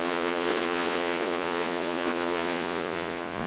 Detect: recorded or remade remade